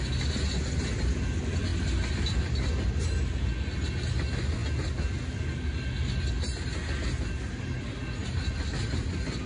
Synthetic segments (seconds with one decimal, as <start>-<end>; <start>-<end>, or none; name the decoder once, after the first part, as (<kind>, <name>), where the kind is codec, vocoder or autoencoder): none